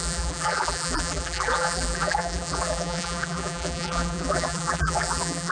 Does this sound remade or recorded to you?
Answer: remade